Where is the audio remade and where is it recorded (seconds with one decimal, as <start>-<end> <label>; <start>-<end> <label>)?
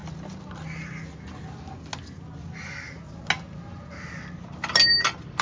0.0-5.4 recorded